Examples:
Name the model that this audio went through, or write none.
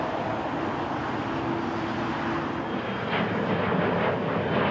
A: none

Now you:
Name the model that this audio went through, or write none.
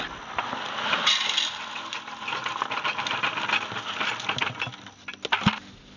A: none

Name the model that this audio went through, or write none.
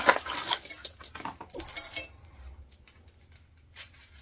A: none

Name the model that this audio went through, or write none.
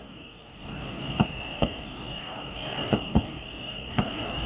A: codec, DAC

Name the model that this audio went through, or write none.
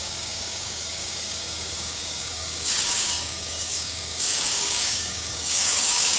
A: codec, DAC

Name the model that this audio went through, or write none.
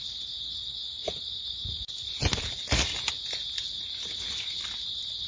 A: none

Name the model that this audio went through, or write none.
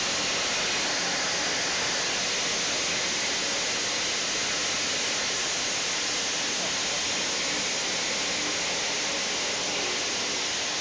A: none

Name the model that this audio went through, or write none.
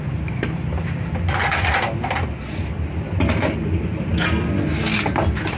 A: none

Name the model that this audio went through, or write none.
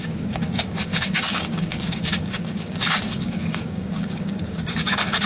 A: codec, DAC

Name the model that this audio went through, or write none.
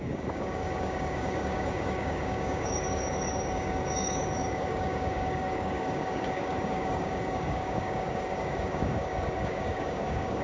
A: codec, DAC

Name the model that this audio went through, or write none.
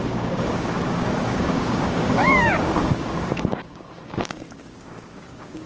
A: codec, DAC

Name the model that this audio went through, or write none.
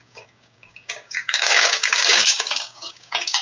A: codec, DAC